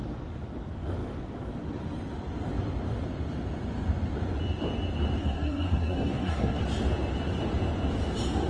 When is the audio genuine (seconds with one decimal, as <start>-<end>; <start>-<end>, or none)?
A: 0.0-5.2; 6.6-8.5